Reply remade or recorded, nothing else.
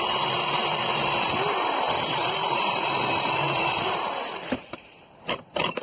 remade